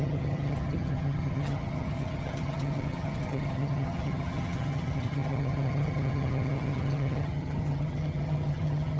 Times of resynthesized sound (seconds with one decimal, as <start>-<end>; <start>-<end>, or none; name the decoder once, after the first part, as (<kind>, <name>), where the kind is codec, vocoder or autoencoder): 0.0-9.0 (vocoder, HiFi-GAN)